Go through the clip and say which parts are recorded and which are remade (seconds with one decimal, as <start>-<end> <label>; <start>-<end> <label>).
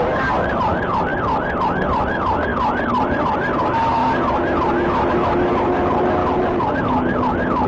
0.0-7.7 recorded